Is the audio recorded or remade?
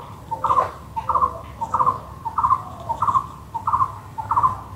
recorded